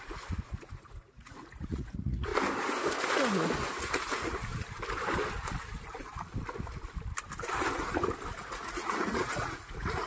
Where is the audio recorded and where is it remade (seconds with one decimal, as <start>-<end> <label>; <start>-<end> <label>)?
0.0-2.3 remade; 2.3-3.7 recorded; 3.7-4.5 remade; 4.5-8.5 recorded; 8.5-10.1 remade